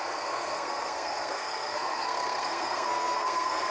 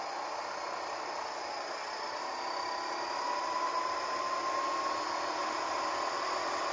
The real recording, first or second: second